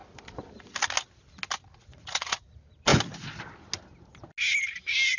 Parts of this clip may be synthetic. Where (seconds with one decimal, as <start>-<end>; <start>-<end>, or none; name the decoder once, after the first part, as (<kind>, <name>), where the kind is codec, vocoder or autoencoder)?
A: 1.9-2.5 (vocoder, Vocos)